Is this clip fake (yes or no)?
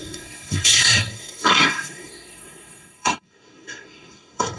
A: yes